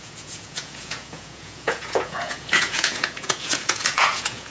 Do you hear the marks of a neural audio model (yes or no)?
yes